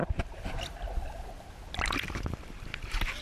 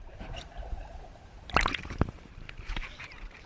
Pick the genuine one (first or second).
first